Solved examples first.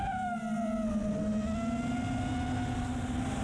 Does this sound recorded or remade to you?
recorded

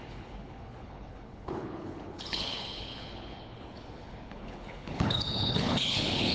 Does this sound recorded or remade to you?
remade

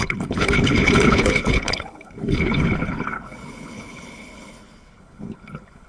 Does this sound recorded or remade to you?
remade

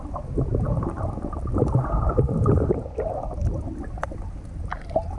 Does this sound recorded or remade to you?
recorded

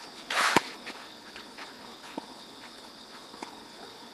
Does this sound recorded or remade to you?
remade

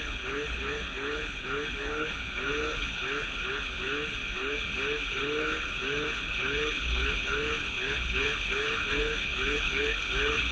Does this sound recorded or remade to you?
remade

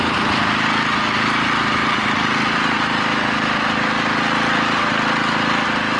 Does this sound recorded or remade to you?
recorded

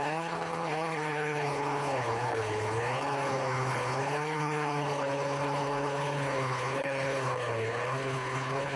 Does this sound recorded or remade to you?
remade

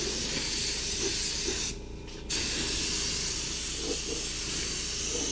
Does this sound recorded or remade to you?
recorded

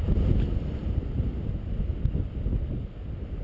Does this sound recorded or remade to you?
recorded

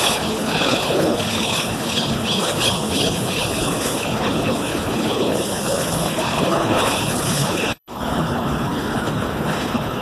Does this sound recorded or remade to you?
remade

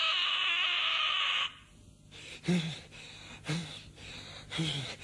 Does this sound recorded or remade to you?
recorded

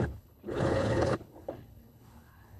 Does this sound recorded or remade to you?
remade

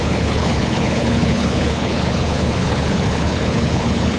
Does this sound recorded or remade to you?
remade